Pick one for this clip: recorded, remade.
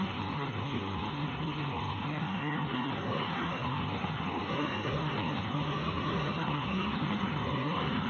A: remade